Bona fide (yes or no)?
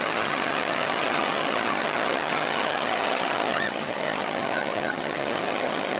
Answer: no